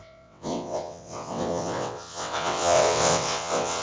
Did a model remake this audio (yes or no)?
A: yes